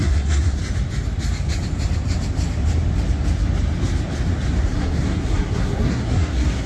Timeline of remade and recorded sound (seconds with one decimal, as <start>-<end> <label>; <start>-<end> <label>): 0.0-0.6 remade; 0.6-4.6 recorded; 4.6-6.7 remade